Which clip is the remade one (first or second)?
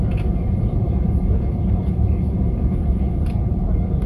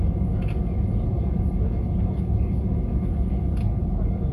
first